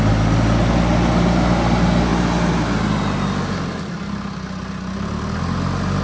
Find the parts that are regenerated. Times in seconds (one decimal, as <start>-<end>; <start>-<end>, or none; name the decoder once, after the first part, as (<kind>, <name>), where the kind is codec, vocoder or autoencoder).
none